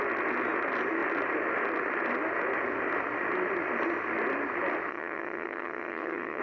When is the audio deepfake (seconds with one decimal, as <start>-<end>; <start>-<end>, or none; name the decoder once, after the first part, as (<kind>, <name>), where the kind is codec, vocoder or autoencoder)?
4.9-6.4 (vocoder, HiFi-GAN)